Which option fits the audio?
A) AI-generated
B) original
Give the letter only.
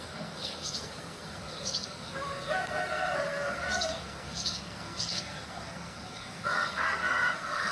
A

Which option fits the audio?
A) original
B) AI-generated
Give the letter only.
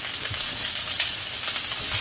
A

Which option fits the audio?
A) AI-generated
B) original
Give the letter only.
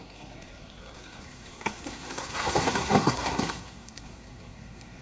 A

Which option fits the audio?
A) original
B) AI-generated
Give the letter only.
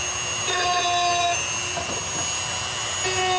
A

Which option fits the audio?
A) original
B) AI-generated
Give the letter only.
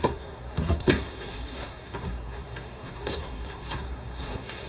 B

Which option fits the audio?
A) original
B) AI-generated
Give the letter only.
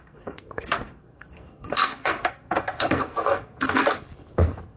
B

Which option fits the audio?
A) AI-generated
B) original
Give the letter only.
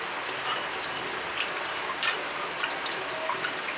B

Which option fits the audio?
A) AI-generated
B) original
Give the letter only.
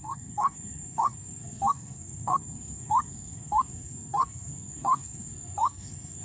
A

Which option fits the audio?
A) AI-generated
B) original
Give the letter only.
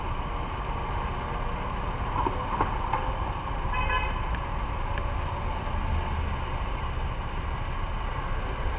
B